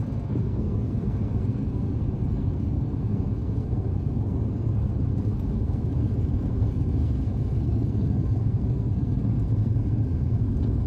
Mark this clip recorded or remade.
remade